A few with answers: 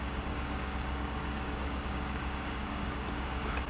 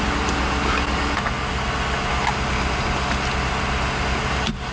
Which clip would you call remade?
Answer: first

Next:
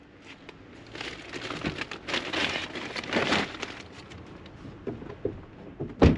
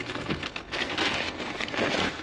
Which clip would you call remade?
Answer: second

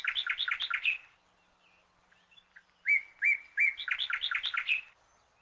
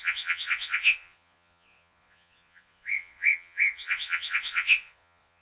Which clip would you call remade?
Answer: second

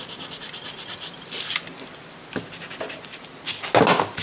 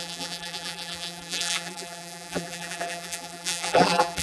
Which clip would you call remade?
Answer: second